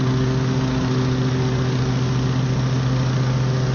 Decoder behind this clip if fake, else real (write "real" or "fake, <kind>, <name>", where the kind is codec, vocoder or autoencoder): real